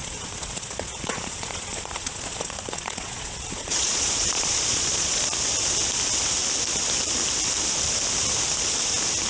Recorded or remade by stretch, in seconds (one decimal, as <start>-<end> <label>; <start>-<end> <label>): 0.0-5.2 remade; 5.2-9.3 recorded